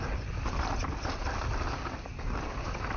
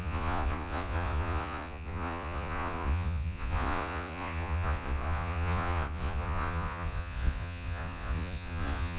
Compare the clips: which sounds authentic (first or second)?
first